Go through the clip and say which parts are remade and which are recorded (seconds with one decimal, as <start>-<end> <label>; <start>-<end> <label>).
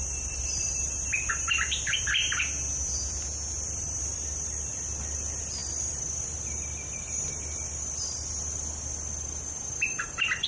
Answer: 0.0-4.1 remade; 4.1-4.7 recorded; 4.7-10.5 remade